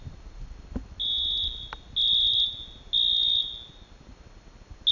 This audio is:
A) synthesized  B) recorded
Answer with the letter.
B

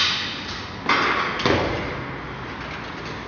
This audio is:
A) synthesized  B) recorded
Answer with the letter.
B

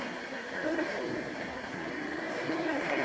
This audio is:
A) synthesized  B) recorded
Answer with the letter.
A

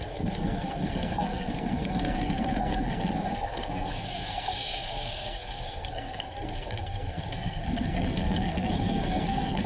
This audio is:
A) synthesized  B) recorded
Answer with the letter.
A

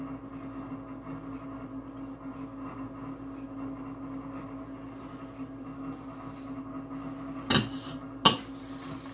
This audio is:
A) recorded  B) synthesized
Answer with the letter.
A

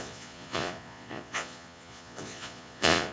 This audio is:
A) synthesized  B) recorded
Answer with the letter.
A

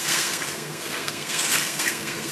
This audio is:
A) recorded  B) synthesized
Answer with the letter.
B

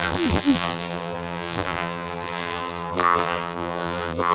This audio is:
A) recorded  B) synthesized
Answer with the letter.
B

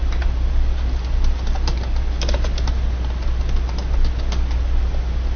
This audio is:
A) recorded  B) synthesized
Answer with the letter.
A